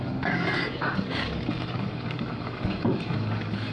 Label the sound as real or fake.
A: fake